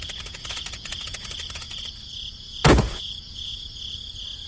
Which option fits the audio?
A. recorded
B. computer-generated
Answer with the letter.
B